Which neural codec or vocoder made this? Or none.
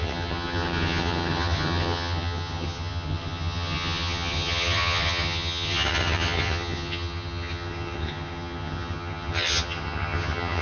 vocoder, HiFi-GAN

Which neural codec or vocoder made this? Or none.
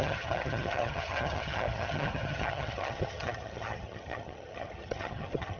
vocoder, HiFi-GAN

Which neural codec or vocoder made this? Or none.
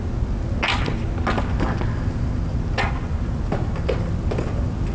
none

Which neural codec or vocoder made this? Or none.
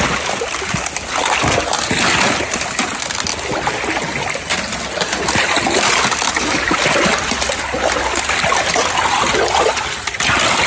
none